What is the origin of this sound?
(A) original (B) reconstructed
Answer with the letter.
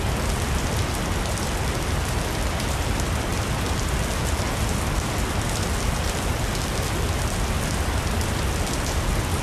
A